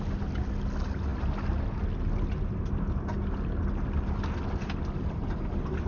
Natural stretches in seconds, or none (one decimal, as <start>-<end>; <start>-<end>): 0.0-5.9

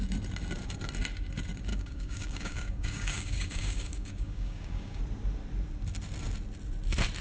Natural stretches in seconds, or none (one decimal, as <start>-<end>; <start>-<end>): 0.0-1.7; 5.0-7.2

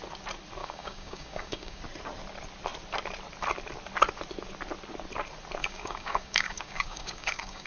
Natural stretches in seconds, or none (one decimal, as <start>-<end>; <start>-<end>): 0.0-0.6; 1.8-5.6

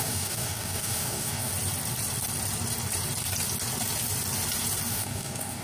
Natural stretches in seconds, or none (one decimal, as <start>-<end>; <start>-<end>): 1.5-4.9

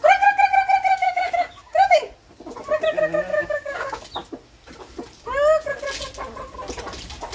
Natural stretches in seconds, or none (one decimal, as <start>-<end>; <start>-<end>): 0.0-0.9; 2.1-3.3; 4.0-7.3

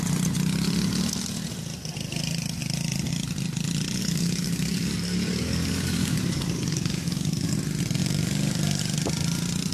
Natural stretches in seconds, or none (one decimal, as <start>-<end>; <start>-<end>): 0.0-4.0; 7.5-8.0; 8.8-9.7

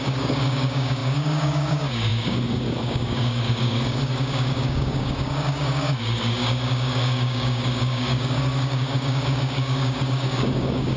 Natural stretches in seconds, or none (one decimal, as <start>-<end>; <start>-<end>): none